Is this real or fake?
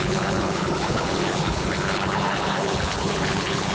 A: fake